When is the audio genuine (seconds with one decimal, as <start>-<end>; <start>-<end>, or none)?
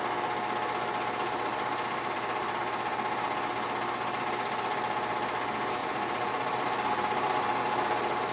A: 0.0-5.8; 7.6-8.3